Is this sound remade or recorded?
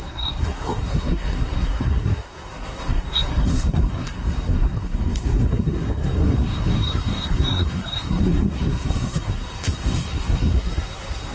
remade